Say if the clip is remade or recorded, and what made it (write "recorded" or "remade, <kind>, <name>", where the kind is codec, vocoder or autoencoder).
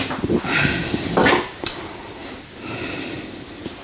recorded